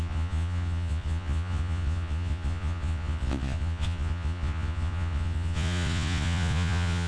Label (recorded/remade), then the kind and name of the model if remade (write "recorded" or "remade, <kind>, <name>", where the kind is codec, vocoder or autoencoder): remade, vocoder, Vocos